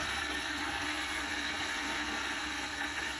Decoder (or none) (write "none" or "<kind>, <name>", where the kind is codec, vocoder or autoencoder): codec, SNAC